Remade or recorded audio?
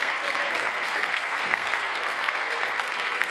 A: remade